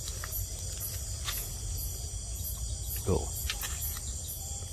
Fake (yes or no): no